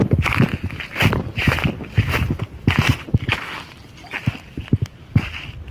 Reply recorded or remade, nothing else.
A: recorded